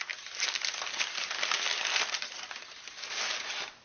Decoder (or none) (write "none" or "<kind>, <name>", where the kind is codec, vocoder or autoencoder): none